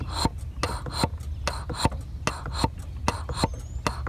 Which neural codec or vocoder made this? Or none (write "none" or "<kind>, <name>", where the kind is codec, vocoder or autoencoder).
none